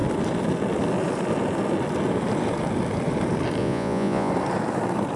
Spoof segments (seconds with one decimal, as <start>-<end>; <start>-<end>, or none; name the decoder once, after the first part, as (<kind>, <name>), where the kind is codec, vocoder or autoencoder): 3.6-4.3 (vocoder, Vocos)